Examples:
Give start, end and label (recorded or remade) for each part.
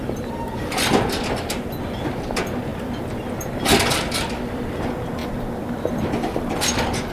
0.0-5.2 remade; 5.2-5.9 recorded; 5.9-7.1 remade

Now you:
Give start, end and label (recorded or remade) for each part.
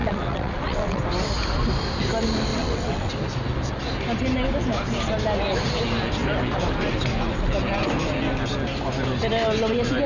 0.0-1.0 remade; 1.0-2.5 recorded; 2.5-3.1 remade; 3.1-10.1 recorded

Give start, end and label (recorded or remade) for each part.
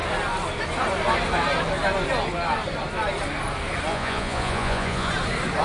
0.0-3.9 recorded; 3.9-5.1 remade; 5.1-5.6 recorded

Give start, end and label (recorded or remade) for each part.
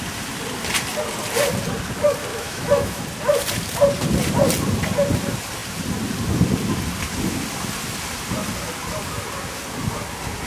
0.0-2.3 recorded; 2.3-3.0 remade; 3.0-10.5 recorded